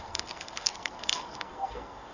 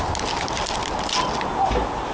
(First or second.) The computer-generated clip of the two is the first